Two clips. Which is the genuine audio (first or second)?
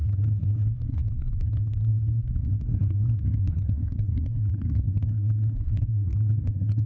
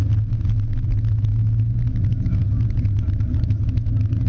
second